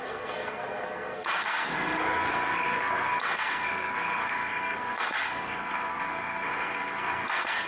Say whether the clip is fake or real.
fake